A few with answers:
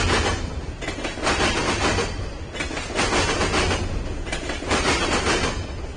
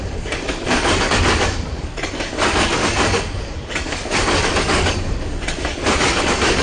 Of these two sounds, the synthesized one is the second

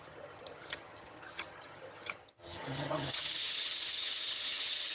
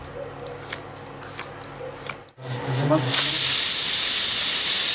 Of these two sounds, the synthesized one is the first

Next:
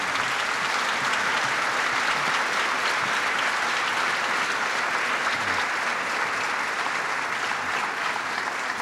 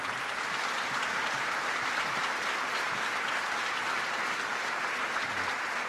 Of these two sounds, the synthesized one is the second